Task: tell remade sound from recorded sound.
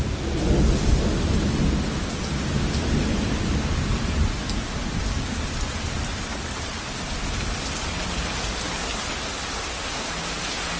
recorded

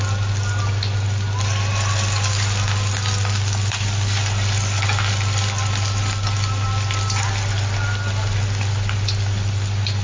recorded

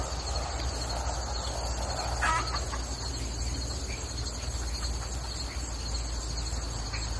recorded